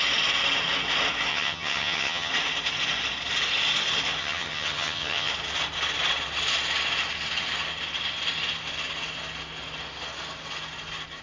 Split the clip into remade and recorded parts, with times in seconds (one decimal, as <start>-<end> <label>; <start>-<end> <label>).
0.0-1.3 recorded; 1.3-2.3 remade; 2.3-4.2 recorded; 4.2-5.3 remade; 5.3-11.2 recorded